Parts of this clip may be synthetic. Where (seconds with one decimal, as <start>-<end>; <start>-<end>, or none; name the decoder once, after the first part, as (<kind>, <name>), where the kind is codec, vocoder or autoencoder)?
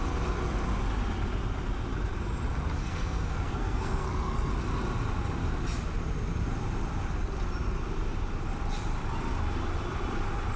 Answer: 2.8-4.5 (codec, SNAC)